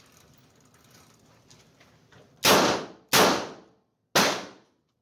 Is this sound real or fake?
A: real